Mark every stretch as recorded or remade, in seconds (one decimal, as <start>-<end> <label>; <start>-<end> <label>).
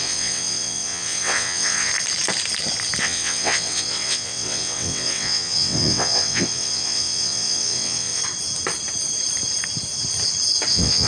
0.0-1.9 remade; 1.9-3.0 recorded; 3.0-8.2 remade; 8.2-10.7 recorded; 10.7-11.1 remade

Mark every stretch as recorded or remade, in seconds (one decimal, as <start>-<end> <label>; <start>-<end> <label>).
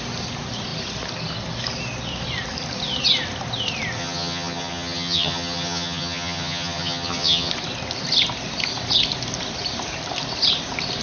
0.0-4.0 recorded; 4.0-7.5 remade; 7.5-11.0 recorded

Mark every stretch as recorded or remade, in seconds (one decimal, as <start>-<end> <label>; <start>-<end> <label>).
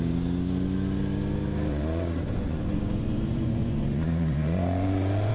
0.0-1.7 recorded; 1.7-5.3 remade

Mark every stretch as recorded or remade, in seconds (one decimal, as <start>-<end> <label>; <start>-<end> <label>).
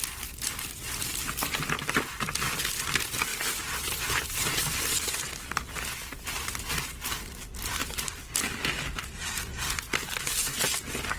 0.0-7.8 recorded; 7.8-8.3 remade; 8.3-11.2 recorded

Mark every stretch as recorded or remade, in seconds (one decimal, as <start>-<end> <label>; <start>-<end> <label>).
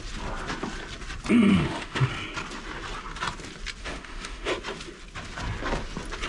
0.0-1.5 recorded; 1.5-2.1 remade; 2.1-3.8 recorded; 3.8-4.5 remade; 4.5-6.3 recorded